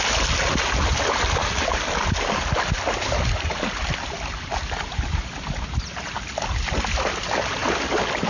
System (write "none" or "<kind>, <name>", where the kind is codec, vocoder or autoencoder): none